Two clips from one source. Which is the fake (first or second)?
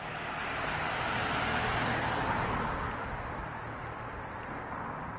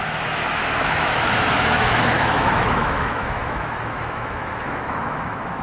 second